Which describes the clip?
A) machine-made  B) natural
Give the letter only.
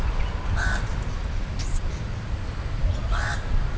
B